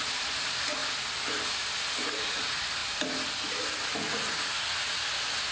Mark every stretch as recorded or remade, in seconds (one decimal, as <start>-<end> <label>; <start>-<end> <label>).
0.0-5.5 recorded